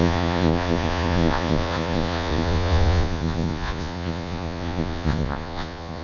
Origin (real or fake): fake